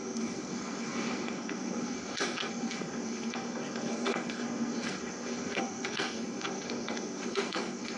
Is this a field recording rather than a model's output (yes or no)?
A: no